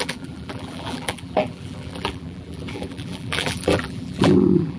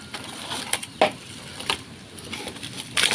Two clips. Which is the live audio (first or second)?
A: second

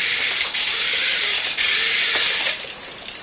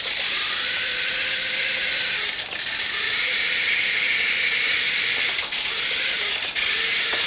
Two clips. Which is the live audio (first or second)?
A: first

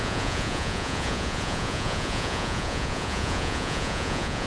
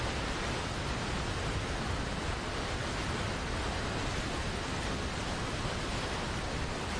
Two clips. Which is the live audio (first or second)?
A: second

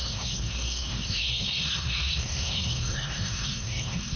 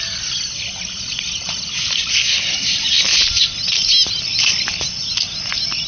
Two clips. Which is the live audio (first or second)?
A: second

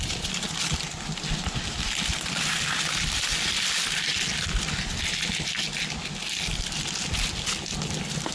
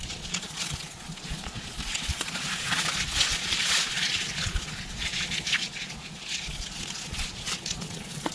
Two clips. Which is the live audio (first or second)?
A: first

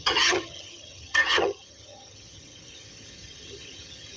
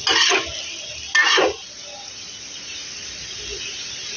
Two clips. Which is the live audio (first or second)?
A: second